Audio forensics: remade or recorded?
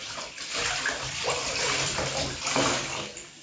recorded